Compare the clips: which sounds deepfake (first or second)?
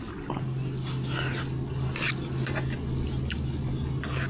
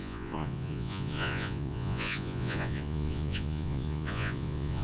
second